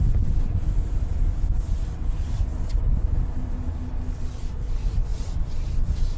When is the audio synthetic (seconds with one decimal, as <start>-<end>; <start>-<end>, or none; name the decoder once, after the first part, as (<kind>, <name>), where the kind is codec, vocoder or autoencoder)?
none